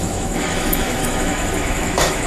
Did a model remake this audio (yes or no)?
yes